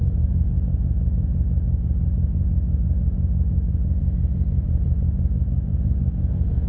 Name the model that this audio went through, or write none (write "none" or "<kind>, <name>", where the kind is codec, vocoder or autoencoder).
vocoder, BigVGAN v2